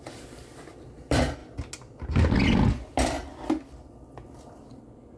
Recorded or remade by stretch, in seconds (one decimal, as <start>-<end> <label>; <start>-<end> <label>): 0.0-1.4 remade; 1.4-4.5 recorded; 4.5-5.2 remade